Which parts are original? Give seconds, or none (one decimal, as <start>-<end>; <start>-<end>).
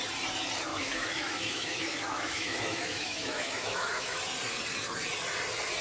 0.0-0.7; 4.2-5.8